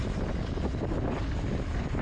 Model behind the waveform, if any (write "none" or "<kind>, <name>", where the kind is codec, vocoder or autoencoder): none